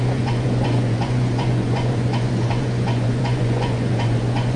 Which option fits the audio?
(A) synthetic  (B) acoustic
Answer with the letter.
A